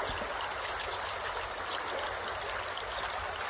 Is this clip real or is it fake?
real